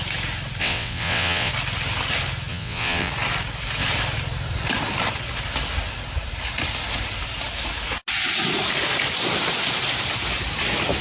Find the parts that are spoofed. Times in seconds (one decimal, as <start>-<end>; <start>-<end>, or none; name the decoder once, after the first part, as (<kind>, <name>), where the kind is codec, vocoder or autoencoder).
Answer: 0.6-1.5 (vocoder, WaveNeXt); 2.5-3.1